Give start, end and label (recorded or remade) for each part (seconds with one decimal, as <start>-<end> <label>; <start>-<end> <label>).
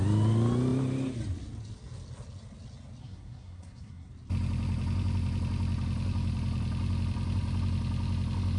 0.0-3.0 recorded; 3.0-4.1 remade; 4.1-8.6 recorded